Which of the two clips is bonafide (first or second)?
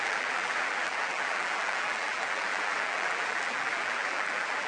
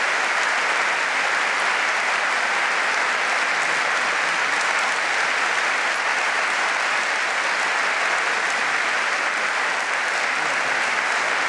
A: second